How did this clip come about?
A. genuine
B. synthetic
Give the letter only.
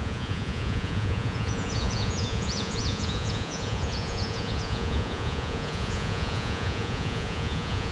B